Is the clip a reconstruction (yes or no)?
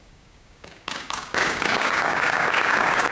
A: yes